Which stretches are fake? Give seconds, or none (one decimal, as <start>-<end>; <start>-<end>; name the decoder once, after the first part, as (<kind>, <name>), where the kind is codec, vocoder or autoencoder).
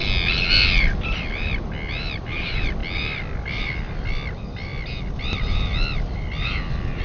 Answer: 1.4-2.8 (vocoder, BigVGAN v2); 3.8-7.0